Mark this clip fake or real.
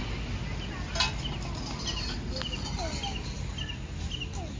real